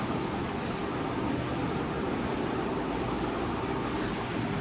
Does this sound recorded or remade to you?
recorded